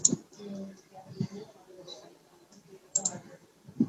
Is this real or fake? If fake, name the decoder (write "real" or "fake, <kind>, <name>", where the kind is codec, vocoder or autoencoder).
fake, vocoder, BigVGAN v2